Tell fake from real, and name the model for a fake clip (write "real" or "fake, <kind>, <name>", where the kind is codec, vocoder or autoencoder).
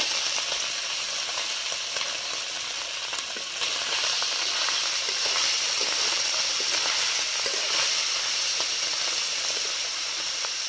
real